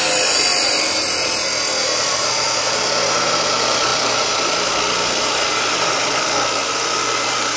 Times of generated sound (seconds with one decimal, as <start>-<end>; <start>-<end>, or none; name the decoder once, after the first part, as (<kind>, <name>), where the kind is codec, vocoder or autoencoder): none